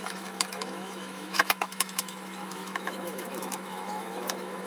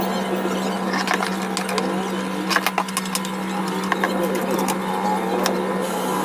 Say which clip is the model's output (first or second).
first